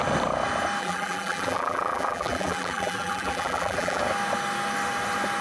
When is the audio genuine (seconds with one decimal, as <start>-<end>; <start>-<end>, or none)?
0.0-0.8; 4.0-5.4

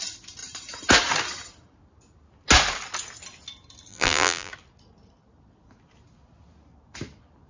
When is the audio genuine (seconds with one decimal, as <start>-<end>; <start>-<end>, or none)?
0.0-3.9; 4.5-7.5

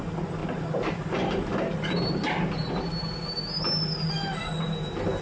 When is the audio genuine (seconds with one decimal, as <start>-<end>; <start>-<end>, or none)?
0.0-5.2